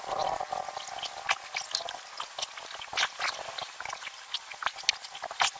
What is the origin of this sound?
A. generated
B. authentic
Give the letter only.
B